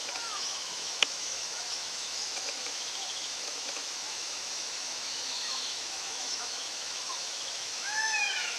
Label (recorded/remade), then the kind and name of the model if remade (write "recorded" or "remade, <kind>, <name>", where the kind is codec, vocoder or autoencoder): remade, autoencoder, DAC-VAE